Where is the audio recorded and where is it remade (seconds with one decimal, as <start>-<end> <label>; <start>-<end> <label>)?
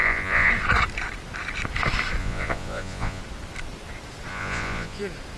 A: 0.0-0.5 remade; 0.5-2.2 recorded; 2.2-3.2 remade; 3.2-4.3 recorded; 4.3-5.0 remade; 5.0-5.4 recorded